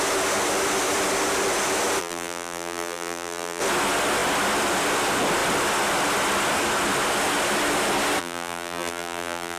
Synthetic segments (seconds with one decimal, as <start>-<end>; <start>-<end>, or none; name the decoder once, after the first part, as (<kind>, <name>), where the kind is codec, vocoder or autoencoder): 2.0-3.6 (vocoder, BigVGAN v2); 8.2-9.6